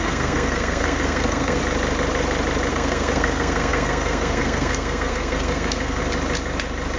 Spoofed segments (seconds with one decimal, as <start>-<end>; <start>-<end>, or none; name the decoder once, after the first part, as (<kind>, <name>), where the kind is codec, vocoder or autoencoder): 0.0-1.6 (codec, SNAC); 2.7-6.0